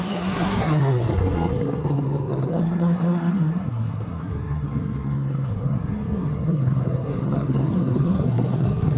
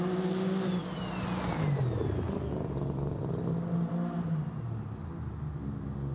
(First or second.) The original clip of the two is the second